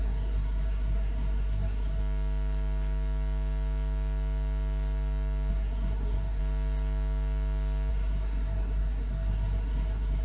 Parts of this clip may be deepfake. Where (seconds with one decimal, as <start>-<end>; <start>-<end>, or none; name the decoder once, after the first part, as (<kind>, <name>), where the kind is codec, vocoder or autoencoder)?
0.0-2.0 (codec, SNAC); 5.5-6.4; 7.9-10.2